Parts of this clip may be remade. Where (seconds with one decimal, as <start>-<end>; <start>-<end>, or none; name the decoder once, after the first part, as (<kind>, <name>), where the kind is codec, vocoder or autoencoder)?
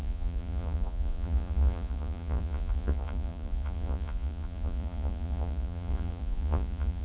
0.0-7.0 (vocoder, Vocos)